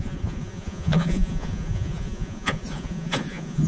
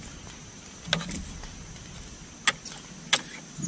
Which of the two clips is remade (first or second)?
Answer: first